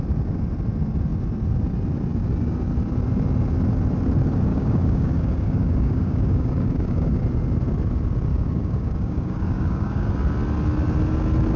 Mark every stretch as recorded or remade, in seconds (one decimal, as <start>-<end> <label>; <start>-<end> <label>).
0.0-4.5 recorded; 4.5-7.2 remade; 7.2-8.3 recorded; 8.3-10.1 remade; 10.1-11.6 recorded